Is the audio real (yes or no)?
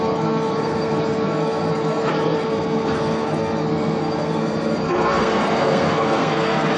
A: no